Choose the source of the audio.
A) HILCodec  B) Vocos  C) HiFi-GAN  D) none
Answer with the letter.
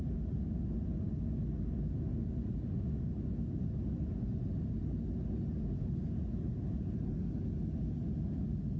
D